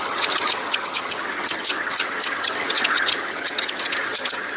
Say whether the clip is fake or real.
fake